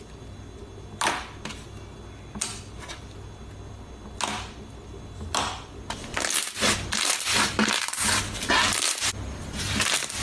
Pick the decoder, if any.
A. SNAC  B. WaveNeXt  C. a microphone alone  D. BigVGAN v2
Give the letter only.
C